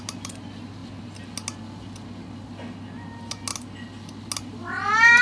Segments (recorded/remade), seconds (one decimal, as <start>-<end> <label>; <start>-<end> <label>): 0.0-5.2 recorded